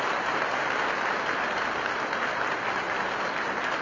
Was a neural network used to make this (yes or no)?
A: no